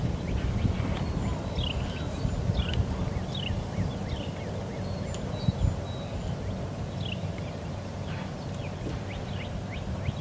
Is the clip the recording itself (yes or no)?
yes